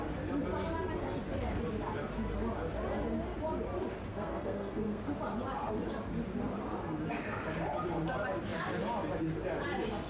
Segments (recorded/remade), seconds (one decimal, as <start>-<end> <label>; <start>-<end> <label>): 0.0-4.1 recorded; 4.1-5.0 remade; 5.0-10.1 recorded